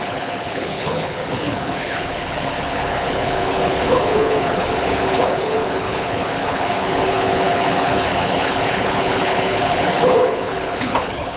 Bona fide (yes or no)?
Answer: no